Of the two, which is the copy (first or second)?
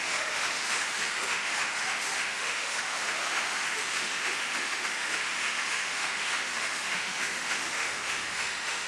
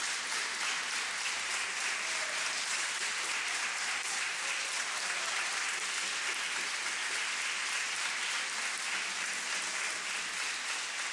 first